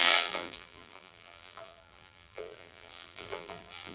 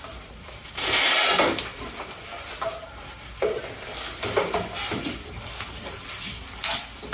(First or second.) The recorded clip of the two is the second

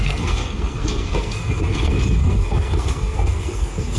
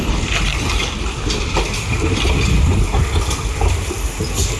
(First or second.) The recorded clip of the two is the second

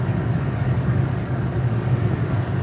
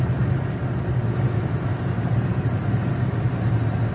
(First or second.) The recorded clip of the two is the second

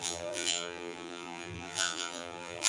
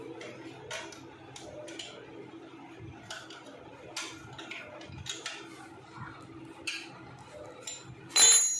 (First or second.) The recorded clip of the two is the second